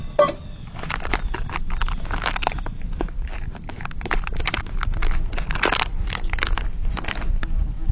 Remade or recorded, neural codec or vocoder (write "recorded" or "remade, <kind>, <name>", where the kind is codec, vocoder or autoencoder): recorded